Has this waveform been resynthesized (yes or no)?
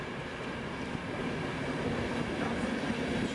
no